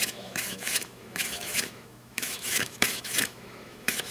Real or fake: fake